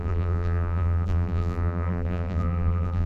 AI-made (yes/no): yes